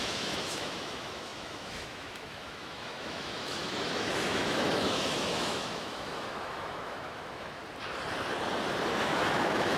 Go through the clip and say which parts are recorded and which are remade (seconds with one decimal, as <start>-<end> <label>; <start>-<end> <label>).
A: 0.0-7.6 remade; 7.6-9.0 recorded; 9.0-9.8 remade